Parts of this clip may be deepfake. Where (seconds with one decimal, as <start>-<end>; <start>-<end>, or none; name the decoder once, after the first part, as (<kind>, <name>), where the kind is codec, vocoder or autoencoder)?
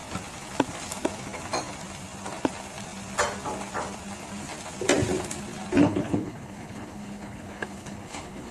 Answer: 5.8-8.5 (codec, HILCodec)